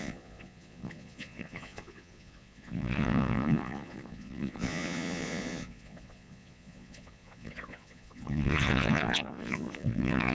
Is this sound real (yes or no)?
no